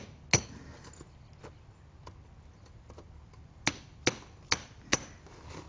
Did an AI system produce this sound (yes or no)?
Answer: no